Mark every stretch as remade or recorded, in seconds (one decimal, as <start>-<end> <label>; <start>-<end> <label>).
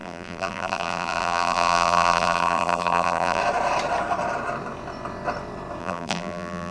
0.0-3.4 remade; 3.4-5.8 recorded; 5.8-6.7 remade